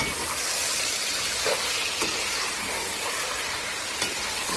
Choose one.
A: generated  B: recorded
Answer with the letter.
B